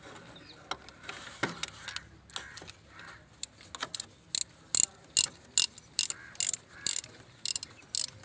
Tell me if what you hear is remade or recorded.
recorded